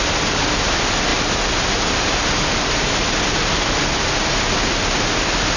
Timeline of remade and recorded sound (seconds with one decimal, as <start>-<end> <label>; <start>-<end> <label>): 0.0-5.6 recorded